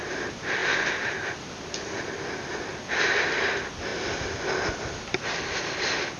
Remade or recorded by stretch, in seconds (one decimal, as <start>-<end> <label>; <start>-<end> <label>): 0.0-6.2 recorded